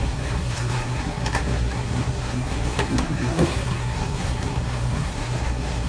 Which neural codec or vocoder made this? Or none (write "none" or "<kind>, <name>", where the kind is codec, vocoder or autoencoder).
codec, SNAC